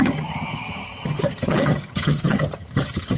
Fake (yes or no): yes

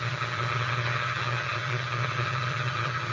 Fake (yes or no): yes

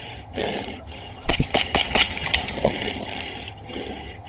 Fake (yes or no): yes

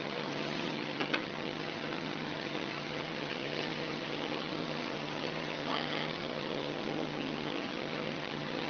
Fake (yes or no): yes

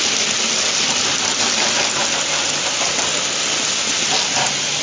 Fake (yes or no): no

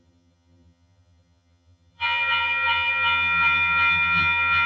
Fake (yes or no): yes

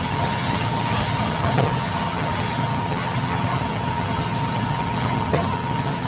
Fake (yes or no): yes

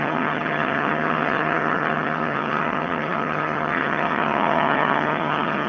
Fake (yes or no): yes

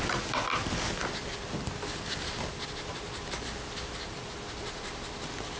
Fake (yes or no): no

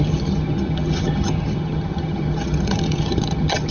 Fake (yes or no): yes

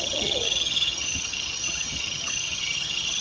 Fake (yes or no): yes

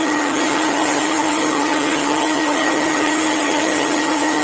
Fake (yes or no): yes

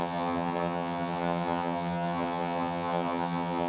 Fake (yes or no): yes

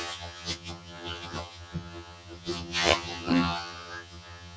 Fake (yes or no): yes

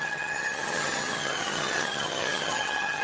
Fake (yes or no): yes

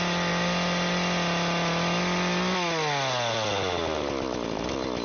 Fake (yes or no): no